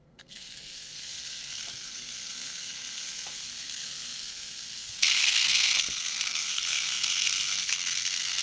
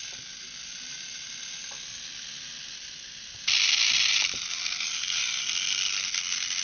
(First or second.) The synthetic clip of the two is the first